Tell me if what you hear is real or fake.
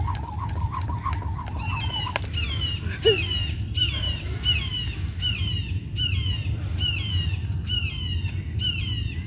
real